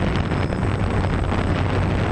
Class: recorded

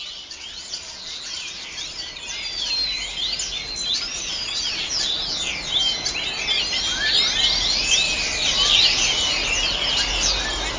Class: recorded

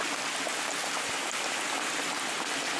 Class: recorded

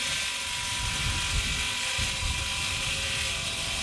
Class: recorded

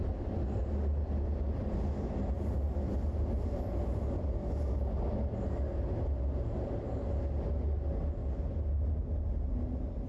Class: recorded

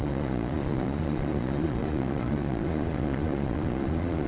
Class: remade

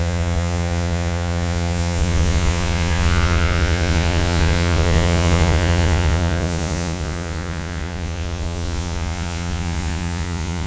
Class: remade